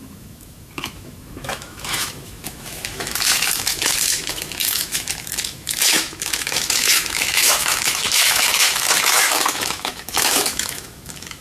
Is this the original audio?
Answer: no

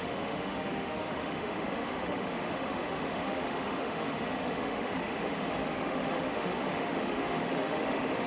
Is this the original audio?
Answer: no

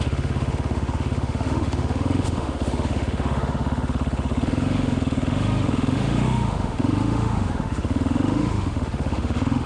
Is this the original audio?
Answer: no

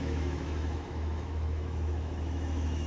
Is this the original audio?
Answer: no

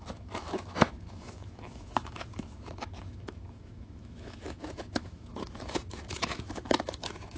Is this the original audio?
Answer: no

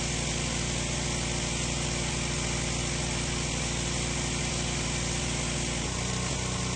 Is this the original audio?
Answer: yes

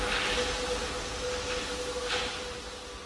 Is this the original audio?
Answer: yes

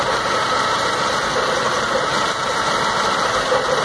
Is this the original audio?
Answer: yes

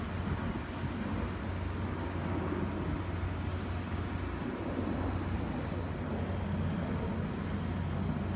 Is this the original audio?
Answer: yes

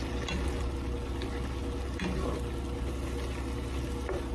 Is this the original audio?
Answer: yes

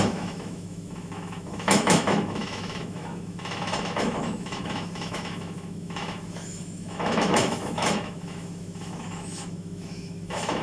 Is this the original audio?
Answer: no